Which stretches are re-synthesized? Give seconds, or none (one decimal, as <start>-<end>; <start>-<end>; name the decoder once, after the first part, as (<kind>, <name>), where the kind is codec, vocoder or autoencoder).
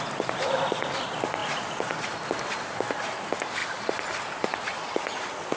3.6-5.6 (vocoder, BigVGAN v2)